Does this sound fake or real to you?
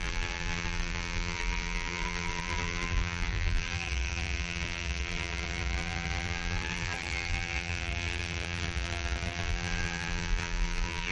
fake